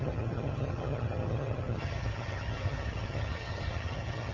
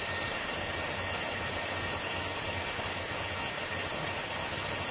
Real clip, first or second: second